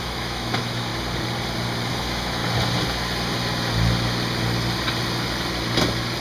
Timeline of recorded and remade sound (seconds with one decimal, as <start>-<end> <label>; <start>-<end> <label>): 0.0-0.9 remade; 0.9-1.9 recorded; 1.9-2.4 remade; 2.4-6.2 recorded